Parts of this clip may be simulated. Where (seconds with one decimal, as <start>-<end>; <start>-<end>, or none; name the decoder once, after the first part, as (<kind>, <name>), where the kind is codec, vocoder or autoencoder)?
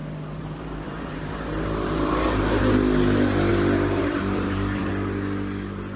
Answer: 0.0-2.6 (vocoder, BigVGAN v2); 3.5-4.9